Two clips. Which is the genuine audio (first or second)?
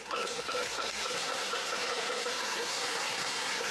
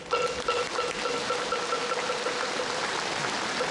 second